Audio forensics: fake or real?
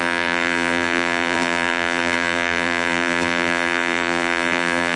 fake